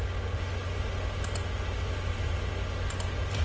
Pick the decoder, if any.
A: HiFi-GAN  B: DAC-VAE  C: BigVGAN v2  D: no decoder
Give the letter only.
D